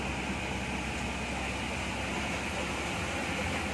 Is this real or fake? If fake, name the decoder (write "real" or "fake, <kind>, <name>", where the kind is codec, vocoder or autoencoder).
real